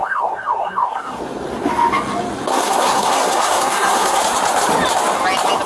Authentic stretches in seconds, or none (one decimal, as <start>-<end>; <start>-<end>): 1.2-2.5; 4.2-5.7

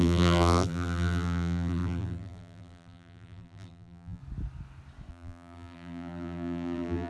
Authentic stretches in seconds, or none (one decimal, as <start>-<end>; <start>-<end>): 4.2-5.1

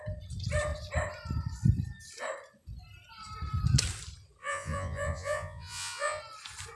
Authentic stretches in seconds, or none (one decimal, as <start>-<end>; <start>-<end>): 0.0-4.4; 6.2-6.8

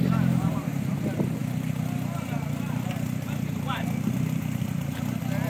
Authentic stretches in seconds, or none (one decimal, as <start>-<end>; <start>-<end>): 0.0-5.5